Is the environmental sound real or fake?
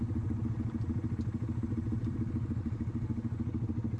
real